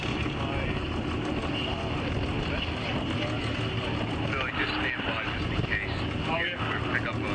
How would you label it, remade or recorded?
recorded